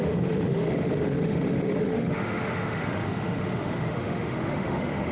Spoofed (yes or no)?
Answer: yes